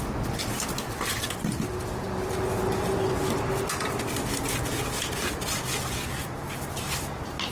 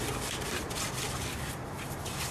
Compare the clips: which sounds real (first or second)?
first